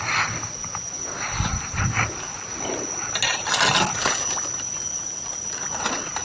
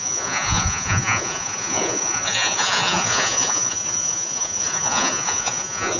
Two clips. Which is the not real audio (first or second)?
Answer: second